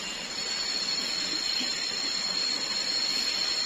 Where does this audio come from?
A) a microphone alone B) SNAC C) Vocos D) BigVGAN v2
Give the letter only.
A